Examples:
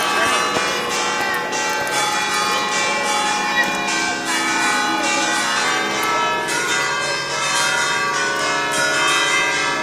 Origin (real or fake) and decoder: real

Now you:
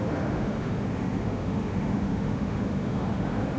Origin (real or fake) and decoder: fake, autoencoder, DAC-VAE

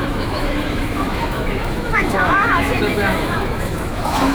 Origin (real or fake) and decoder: fake, autoencoder, DAC-VAE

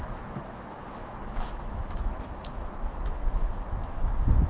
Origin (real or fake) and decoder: fake, autoencoder, DAC-VAE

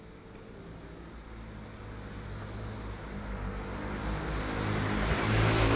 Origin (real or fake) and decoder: real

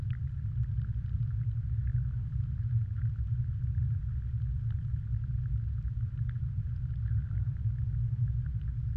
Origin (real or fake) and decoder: real